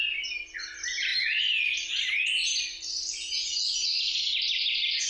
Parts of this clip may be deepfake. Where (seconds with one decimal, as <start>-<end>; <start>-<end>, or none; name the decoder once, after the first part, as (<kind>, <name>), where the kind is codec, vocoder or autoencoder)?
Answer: none